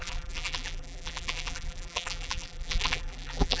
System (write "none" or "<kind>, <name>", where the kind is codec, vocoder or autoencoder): vocoder, BigVGAN v2